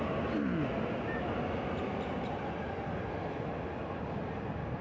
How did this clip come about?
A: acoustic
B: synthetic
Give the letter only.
A